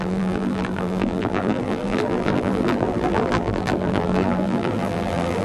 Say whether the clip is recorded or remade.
remade